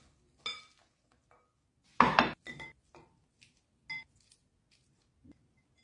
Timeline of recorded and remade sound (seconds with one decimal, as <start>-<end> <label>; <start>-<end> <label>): 0.0-5.8 recorded